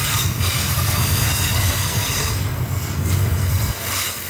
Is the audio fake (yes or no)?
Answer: yes